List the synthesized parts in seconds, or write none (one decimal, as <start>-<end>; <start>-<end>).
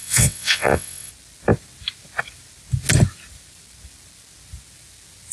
0.0-1.1